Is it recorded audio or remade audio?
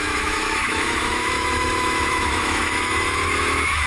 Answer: remade